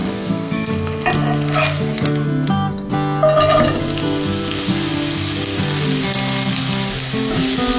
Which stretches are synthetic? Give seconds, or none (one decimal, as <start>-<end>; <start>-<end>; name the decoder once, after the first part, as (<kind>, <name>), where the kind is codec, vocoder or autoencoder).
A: 0.0-0.7 (codec, SNAC)